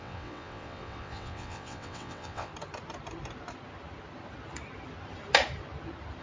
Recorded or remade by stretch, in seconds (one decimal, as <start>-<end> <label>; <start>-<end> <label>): 0.0-2.5 remade; 2.5-6.2 recorded